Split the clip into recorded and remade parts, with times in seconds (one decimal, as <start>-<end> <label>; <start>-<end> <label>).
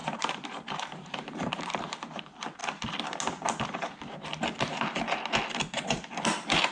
0.0-2.6 remade; 2.6-6.7 recorded